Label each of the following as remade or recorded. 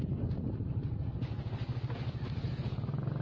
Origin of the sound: recorded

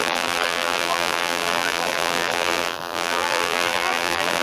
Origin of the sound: remade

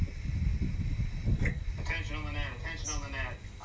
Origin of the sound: recorded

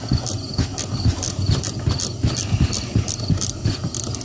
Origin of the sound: recorded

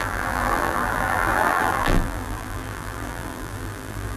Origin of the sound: remade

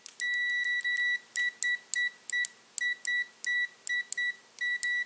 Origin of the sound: recorded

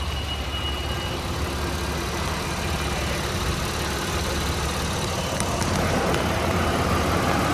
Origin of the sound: recorded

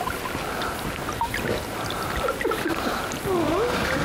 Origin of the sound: recorded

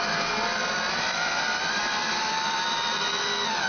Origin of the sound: recorded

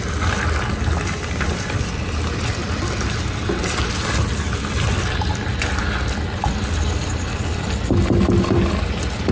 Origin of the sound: recorded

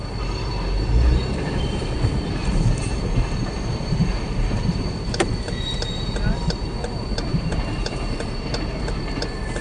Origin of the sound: remade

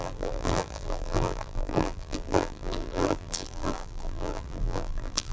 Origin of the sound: remade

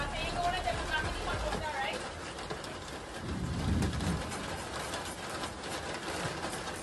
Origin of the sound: recorded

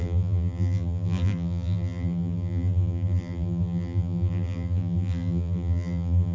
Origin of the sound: remade